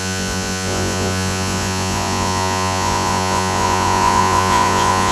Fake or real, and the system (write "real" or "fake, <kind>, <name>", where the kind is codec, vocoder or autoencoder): fake, vocoder, Vocos